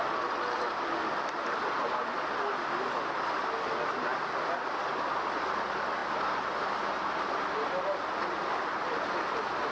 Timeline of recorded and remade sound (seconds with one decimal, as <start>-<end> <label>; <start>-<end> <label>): 0.0-9.7 recorded